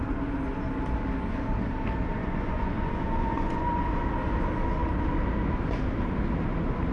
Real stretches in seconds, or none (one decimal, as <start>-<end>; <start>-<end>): 0.0-2.2; 3.8-6.9